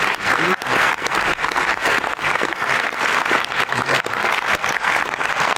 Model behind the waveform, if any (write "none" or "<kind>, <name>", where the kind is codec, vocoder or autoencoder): codec, SNAC